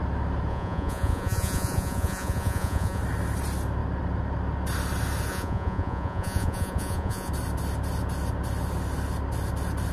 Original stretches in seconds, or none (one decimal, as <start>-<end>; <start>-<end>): 0.0-0.5; 3.0-5.3; 7.3-9.9